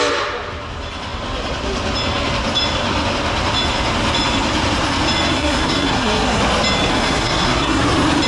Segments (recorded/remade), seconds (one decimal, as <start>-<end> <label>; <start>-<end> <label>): 0.0-5.3 recorded; 5.3-6.4 remade; 6.4-6.9 recorded; 6.9-7.8 remade; 7.8-8.3 recorded